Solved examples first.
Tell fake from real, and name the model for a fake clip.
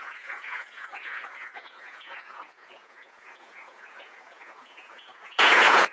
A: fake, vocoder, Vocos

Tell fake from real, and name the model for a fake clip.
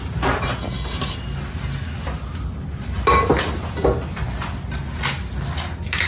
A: real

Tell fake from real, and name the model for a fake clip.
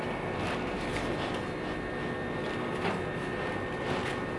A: real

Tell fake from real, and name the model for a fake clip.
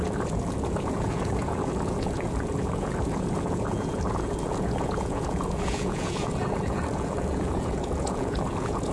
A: fake, vocoder, Vocos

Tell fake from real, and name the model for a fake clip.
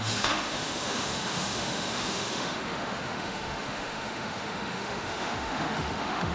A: fake, autoencoder, DAC-VAE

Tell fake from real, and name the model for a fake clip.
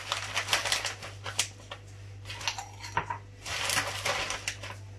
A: real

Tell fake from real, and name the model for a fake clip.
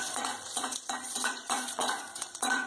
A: fake, vocoder, Vocos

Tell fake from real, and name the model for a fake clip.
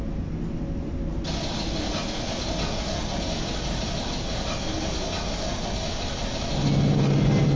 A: real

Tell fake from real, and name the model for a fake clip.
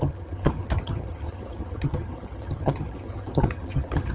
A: fake, vocoder, HiFi-GAN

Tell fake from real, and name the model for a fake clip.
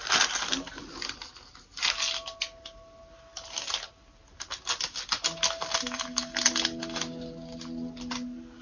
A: real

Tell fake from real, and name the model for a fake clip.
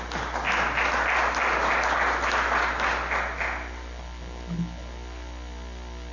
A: real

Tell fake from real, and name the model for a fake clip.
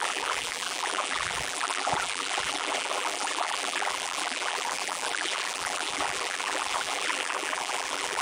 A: fake, vocoder, BigVGAN v2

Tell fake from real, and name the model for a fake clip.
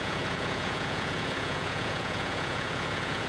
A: fake, vocoder, Vocos